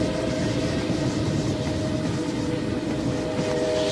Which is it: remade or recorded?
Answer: recorded